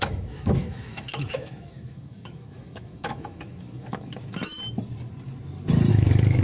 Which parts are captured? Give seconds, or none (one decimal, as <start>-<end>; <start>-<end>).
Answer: 4.6-5.9